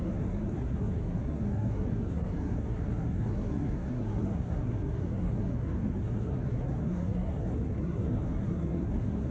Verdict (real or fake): fake